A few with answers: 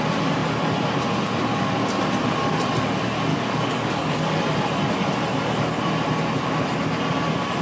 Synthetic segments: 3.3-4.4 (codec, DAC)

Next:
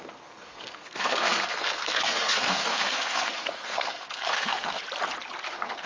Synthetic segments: 0.0-4.8 (codec, SNAC); 5.5-5.9

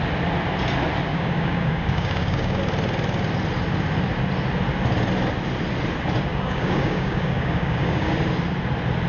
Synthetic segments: 1.1-2.6 (codec, DAC); 6.3-8.1

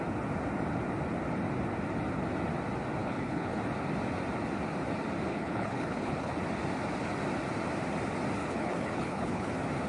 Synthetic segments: 3.0-3.6 (codec, HILCodec); 5.3-6.3; 8.4-9.5

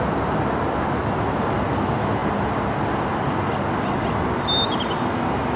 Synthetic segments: none

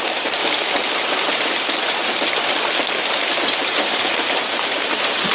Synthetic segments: 0.0-0.4 (vocoder, BigVGAN v2); 1.1-2.0; 3.4-5.3

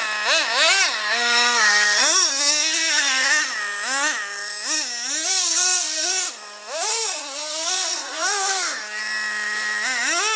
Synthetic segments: 1.0-3.4 (codec, SNAC); 5.3-6.1; 6.9-9.0